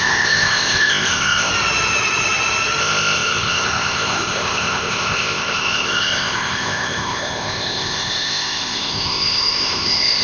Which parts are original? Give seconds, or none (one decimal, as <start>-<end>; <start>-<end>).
1.5-2.8